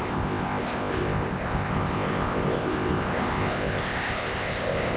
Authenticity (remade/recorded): remade